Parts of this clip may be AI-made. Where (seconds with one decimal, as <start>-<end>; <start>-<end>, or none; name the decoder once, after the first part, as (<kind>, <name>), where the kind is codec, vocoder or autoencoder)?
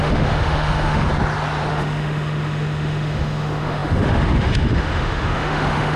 0.0-1.1 (autoencoder, DAC-VAE); 1.7-6.0